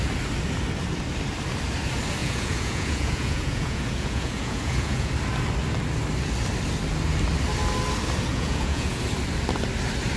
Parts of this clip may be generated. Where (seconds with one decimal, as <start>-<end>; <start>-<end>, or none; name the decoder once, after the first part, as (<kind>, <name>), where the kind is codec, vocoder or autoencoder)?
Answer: 2.2-5.1 (vocoder, Vocos); 8.3-9.0

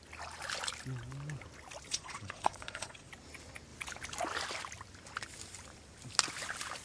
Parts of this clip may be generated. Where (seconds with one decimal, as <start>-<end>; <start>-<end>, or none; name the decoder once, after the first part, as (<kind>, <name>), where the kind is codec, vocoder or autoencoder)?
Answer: 1.9-3.1 (vocoder, Vocos)